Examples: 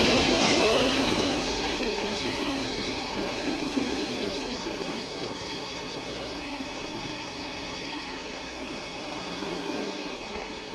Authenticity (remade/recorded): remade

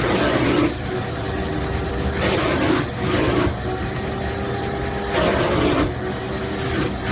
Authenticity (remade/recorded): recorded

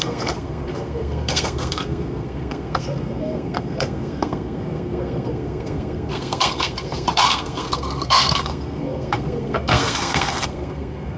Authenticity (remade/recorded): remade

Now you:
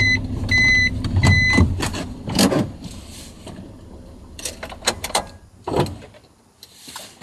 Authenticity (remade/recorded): remade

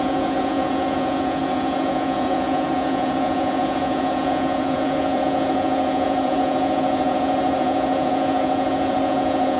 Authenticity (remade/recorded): remade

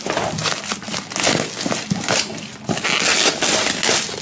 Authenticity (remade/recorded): recorded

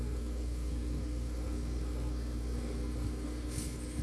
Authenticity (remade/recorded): remade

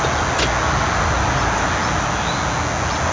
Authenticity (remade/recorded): recorded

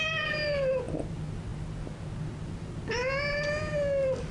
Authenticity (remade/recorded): recorded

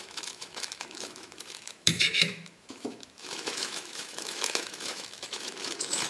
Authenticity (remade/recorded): remade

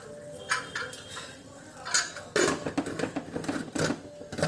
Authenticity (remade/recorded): recorded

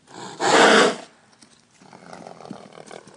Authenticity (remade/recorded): recorded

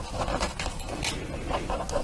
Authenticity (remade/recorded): recorded